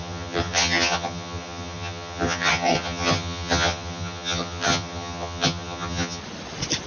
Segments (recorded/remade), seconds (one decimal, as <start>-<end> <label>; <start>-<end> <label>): 0.0-6.2 remade; 6.2-6.9 recorded